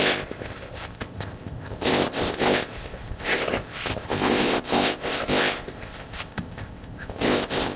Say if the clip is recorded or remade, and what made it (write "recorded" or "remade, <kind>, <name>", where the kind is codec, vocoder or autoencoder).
remade, codec, ZipCodec